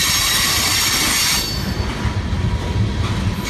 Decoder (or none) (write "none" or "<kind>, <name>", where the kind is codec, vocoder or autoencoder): none